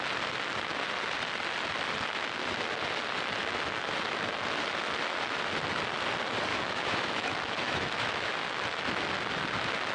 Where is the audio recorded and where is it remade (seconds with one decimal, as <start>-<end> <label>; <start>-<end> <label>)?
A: 0.0-6.5 recorded; 6.5-8.3 remade; 8.3-9.9 recorded